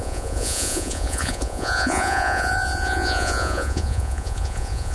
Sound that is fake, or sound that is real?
fake